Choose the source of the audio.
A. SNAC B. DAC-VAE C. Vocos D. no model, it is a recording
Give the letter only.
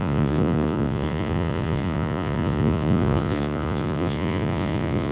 C